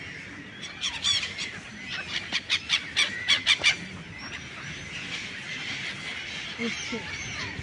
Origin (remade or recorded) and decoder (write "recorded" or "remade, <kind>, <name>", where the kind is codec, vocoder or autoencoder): recorded